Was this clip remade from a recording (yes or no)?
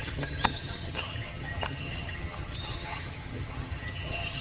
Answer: yes